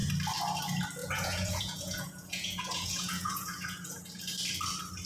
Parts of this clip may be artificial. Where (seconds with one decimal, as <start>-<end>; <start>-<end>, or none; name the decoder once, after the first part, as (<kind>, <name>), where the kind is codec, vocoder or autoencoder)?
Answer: 1.0-4.1 (vocoder, Vocos)